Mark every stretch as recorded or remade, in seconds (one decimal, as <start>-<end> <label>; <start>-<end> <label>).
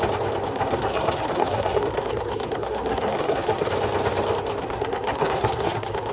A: 0.0-0.5 recorded; 0.5-3.7 remade; 3.7-4.6 recorded; 4.6-6.1 remade